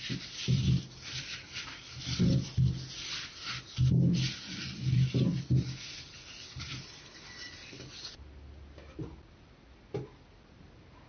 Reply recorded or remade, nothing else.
recorded